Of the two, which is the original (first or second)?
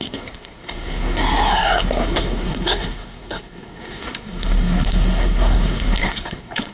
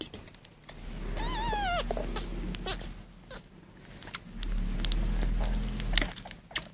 second